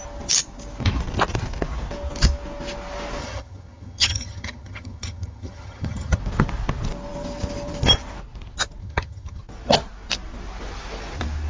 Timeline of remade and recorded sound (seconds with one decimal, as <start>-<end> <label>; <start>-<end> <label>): 0.0-3.2 recorded; 3.2-6.2 remade; 6.2-8.8 recorded; 8.8-9.4 remade; 9.4-11.5 recorded